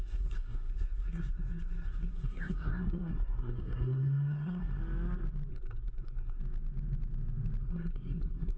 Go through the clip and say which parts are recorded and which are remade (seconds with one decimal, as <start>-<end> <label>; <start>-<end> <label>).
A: 0.0-4.8 remade; 4.8-5.5 recorded; 5.5-6.4 remade; 6.4-7.6 recorded; 7.6-8.6 remade